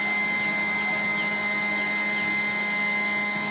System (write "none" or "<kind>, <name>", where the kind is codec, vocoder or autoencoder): none